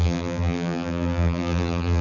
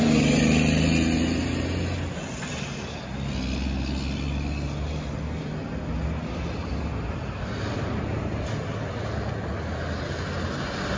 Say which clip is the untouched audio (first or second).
second